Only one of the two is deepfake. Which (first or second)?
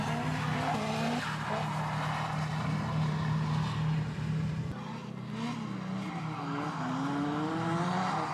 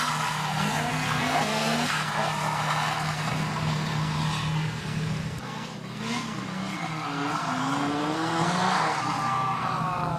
second